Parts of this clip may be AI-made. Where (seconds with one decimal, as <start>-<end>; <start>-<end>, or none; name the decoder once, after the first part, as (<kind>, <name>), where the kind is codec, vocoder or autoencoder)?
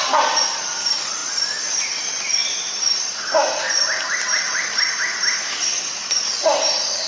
none